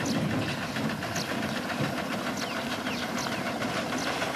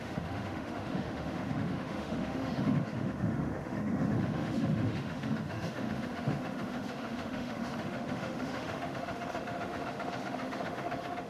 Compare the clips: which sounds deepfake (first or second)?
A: second